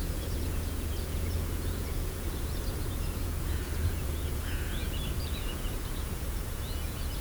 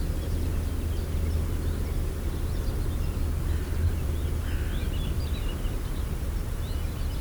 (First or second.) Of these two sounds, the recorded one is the second